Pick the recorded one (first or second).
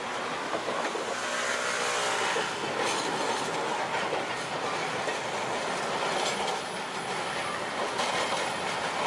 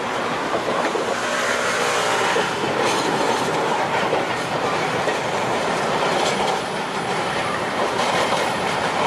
first